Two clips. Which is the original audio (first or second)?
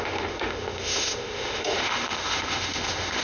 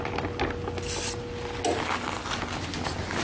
second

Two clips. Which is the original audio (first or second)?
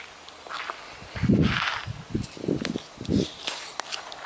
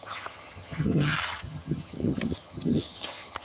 first